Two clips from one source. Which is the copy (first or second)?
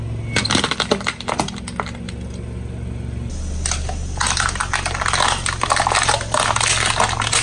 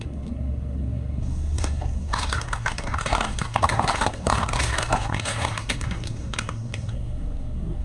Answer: second